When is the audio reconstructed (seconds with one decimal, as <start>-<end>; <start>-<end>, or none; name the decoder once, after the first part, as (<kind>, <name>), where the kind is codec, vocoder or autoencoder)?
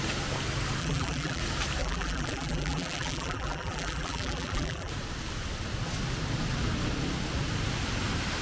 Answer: 0.8-1.4 (vocoder, BigVGAN v2); 1.8-4.9